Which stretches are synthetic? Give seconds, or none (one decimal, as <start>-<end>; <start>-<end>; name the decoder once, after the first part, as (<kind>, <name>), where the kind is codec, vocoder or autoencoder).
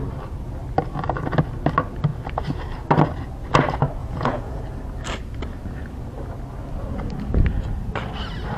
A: 4.0-4.6 (vocoder, Vocos)